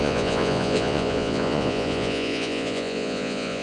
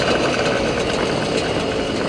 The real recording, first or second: second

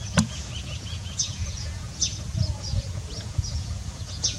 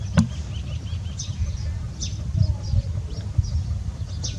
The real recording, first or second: second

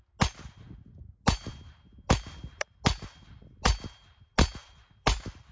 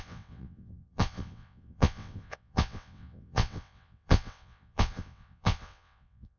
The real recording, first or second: first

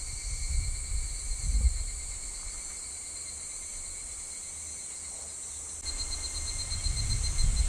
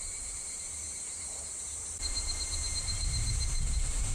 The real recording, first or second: first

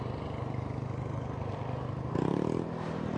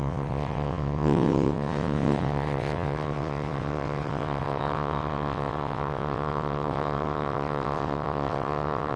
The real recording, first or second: first